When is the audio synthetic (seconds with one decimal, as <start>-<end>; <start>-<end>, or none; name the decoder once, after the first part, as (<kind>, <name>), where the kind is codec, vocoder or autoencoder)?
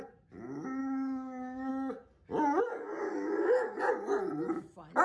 0.8-1.7 (codec, DAC); 2.7-3.8